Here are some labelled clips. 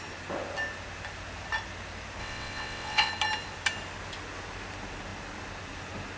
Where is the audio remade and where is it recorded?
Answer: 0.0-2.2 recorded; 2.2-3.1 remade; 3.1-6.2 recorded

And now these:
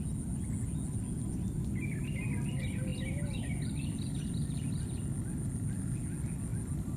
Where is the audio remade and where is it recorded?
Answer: 0.0-7.0 recorded

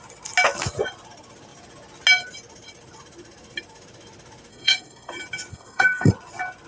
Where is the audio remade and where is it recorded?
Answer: 0.0-4.5 recorded; 4.5-5.1 remade; 5.1-5.5 recorded; 5.5-6.1 remade; 6.1-6.7 recorded

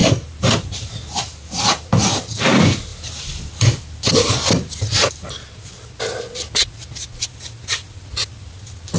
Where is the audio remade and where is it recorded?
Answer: 0.0-1.9 remade; 1.9-2.9 recorded; 2.9-3.5 remade; 3.5-9.0 recorded